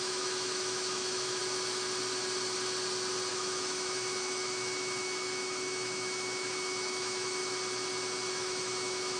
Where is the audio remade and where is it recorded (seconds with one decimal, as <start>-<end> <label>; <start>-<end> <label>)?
0.0-1.4 remade; 1.4-3.3 recorded; 3.3-7.4 remade; 7.4-8.3 recorded; 8.3-9.2 remade